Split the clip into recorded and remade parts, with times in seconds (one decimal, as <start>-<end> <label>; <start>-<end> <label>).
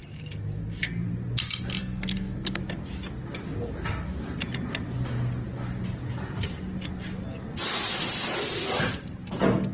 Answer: 0.0-1.8 recorded; 1.8-2.6 remade; 2.6-9.7 recorded